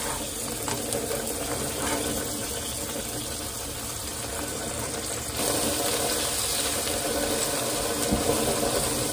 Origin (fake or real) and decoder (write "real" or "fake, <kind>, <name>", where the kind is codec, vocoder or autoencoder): real